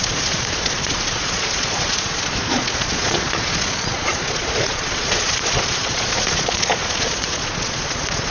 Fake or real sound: fake